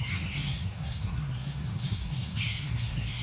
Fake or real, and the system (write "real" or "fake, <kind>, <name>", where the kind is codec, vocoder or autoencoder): fake, codec, SNAC